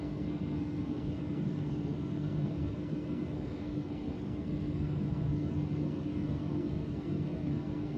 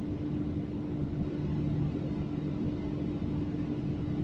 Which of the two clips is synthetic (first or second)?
first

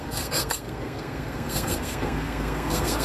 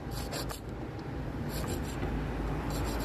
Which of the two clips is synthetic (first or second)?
first